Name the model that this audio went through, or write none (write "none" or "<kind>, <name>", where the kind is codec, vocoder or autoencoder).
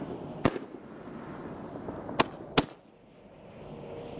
none